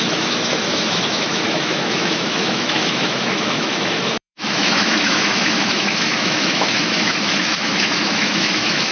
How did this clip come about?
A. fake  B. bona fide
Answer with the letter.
A